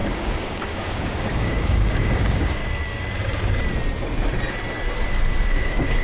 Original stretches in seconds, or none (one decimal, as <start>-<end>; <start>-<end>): 2.6-5.5